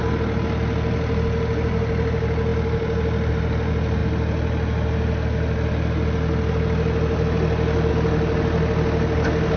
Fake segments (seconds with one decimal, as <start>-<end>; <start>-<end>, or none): none